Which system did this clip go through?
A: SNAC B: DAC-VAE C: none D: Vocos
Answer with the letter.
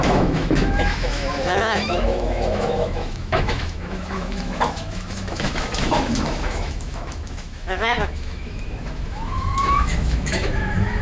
B